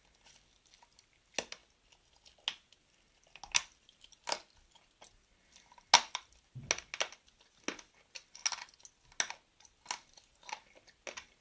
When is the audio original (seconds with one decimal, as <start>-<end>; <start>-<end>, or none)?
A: 0.0-11.4